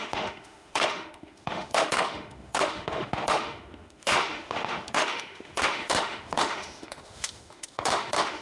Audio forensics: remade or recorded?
remade